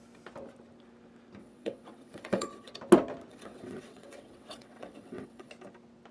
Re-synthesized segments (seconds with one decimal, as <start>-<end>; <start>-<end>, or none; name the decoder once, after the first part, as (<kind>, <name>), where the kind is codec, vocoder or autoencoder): 1.4-2.7 (vocoder, WaveNeXt); 3.3-5.5